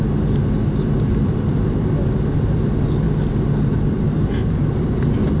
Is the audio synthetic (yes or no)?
no